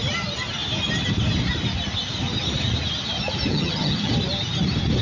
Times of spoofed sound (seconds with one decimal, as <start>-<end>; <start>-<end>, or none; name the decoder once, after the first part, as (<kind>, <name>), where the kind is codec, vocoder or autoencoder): 3.5-4.1 (vocoder, HiFi-GAN)